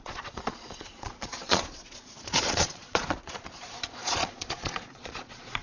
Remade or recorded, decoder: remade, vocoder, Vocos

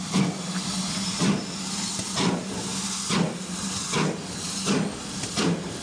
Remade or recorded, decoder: recorded